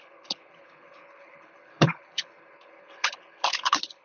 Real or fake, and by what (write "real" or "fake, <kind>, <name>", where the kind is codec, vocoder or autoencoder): fake, codec, HILCodec